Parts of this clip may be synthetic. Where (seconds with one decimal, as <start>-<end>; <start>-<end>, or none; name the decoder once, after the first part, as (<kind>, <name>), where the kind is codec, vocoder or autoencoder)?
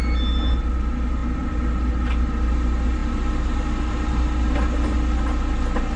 none